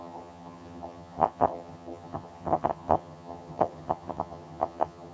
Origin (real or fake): fake